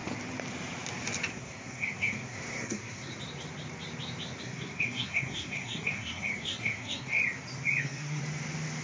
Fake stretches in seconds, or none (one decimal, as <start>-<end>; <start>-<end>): 1.3-3.1; 4.4-7.2; 7.8-8.2